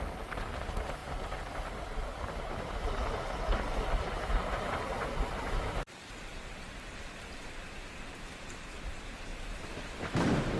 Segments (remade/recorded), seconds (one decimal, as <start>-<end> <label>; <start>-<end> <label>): 0.0-1.0 remade; 1.0-3.9 recorded; 3.9-9.3 remade; 9.3-10.0 recorded; 10.0-10.6 remade